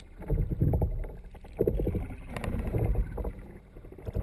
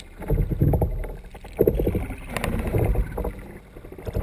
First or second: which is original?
second